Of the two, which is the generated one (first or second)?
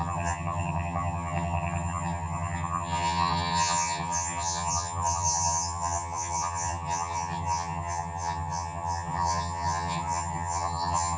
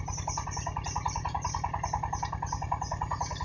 first